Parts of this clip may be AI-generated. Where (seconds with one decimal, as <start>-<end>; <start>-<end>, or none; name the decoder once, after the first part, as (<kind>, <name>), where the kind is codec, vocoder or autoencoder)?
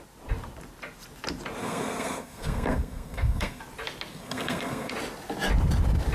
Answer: 1.6-3.6 (codec, SNAC); 4.1-4.9